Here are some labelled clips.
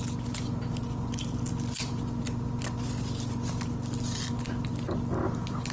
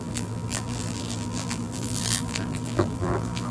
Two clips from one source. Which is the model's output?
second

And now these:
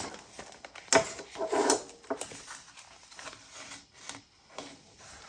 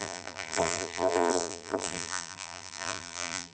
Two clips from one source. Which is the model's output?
second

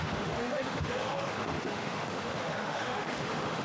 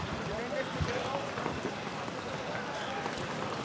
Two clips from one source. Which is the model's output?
first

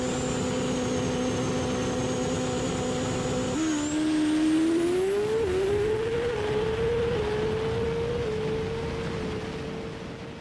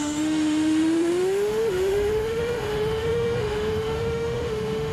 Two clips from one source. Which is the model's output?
second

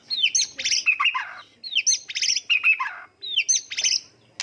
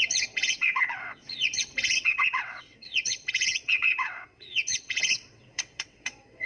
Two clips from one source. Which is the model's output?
second